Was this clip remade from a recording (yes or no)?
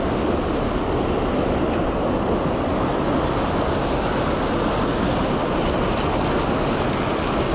no